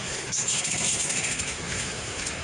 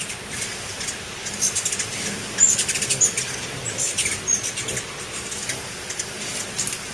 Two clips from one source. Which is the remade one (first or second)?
first